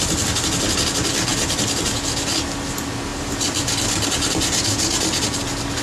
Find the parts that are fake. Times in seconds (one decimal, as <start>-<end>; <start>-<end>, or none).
none